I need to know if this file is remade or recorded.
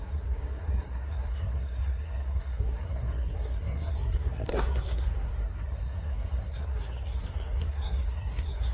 remade